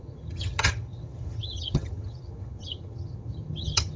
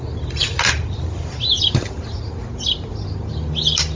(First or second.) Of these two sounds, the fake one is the first